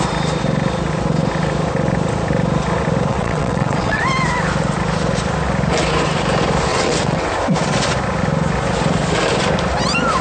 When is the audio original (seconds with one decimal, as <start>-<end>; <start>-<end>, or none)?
0.0-3.1; 4.0-6.7; 7.3-10.2